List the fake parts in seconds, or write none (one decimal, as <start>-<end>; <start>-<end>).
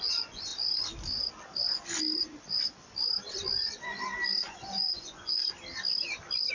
0.0-0.5; 4.4-5.4